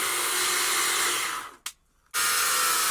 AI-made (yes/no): no